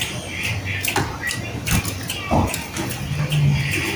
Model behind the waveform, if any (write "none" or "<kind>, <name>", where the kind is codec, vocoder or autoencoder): none